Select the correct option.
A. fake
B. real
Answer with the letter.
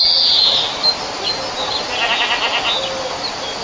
B